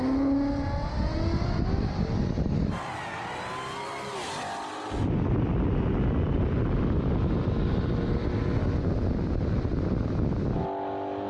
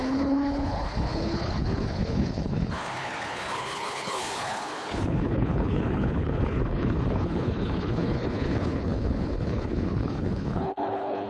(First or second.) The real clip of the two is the first